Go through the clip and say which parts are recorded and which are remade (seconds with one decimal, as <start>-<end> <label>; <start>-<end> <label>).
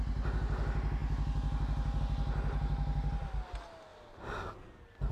0.0-5.1 recorded